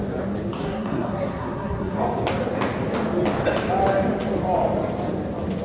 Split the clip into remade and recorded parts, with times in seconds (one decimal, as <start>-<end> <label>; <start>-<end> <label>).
0.0-0.6 recorded; 0.6-2.0 remade; 2.0-5.6 recorded